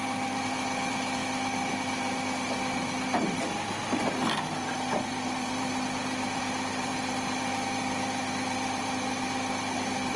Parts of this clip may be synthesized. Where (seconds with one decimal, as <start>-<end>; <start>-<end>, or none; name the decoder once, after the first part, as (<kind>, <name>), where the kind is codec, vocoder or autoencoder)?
0.0-1.2 (vocoder, BigVGAN v2); 5.4-6.9; 7.5-10.2